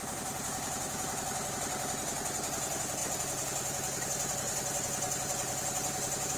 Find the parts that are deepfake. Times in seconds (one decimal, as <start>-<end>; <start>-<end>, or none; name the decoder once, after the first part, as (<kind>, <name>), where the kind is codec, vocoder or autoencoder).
0.0-1.5 (vocoder, BigVGAN v2)